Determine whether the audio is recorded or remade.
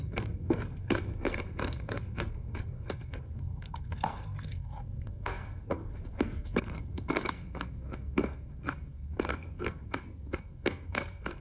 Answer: remade